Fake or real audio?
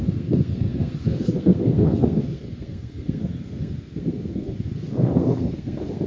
fake